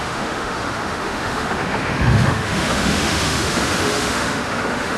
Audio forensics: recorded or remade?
remade